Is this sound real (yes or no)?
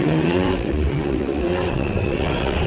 no